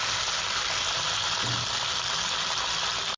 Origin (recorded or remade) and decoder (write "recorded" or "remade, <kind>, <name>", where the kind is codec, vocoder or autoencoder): recorded